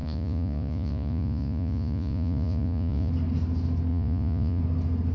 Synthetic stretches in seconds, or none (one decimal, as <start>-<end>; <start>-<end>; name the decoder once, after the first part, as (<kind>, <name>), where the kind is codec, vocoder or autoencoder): 0.0-3.1 (vocoder, Vocos); 3.9-4.6